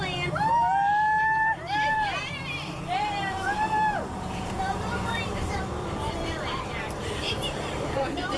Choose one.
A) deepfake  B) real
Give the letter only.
A